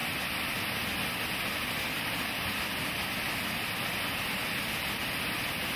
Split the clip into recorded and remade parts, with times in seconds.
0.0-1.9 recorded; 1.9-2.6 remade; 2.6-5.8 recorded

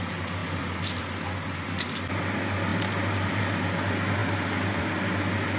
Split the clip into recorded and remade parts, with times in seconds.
0.0-0.4 recorded; 0.4-1.0 remade; 1.0-2.7 recorded; 2.7-3.4 remade; 3.4-5.6 recorded